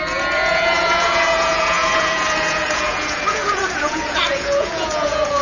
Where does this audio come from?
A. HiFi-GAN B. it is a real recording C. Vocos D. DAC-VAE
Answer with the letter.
C